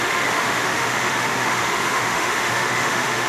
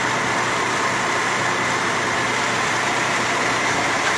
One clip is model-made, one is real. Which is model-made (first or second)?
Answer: first